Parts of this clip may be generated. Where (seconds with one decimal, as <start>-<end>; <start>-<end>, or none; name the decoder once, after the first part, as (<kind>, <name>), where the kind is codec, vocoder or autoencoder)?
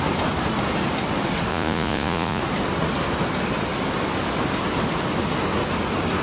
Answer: 1.5-2.4 (vocoder, Vocos)